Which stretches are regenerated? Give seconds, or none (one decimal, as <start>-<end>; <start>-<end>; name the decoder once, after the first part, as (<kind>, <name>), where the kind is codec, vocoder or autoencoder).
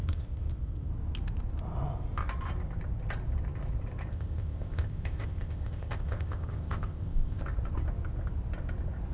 0.0-0.9 (codec, ZipCodec); 4.1-7.4